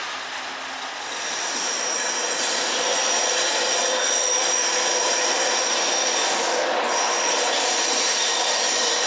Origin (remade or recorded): recorded